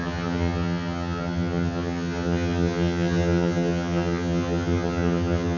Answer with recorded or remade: remade